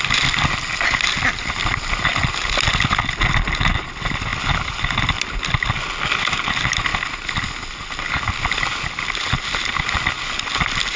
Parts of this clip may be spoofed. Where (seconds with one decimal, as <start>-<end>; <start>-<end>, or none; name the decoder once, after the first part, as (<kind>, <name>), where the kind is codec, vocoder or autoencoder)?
none